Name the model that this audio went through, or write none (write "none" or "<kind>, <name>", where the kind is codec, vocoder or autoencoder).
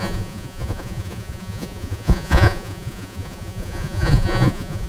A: vocoder, Vocos